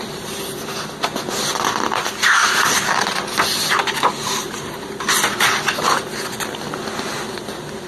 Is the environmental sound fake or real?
real